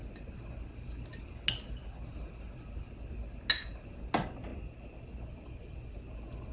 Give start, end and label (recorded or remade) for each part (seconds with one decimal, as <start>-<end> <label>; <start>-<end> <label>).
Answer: 0.0-6.5 recorded